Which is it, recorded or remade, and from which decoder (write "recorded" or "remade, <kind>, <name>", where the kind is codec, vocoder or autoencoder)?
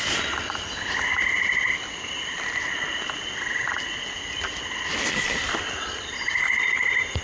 recorded